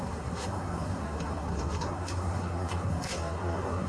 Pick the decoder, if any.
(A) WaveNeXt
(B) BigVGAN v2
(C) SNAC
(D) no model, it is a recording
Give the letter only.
C